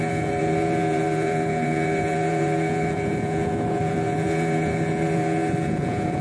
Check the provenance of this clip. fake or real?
fake